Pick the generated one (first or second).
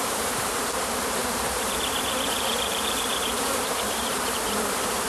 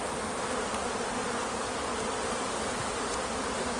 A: first